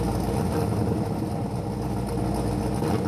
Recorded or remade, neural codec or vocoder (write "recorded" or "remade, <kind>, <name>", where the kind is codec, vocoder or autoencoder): recorded